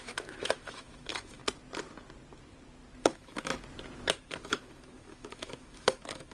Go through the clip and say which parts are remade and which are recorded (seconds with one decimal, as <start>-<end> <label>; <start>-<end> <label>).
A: 0.0-1.4 remade; 1.4-3.0 recorded; 3.0-3.5 remade; 3.5-4.1 recorded; 4.1-6.3 remade